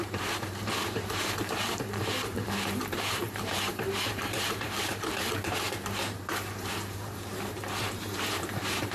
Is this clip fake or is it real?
fake